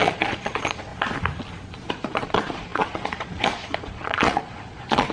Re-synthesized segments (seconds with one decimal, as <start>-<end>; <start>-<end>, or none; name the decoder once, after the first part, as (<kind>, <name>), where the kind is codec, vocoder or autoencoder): 0.0-0.9 (vocoder, Vocos); 1.9-5.1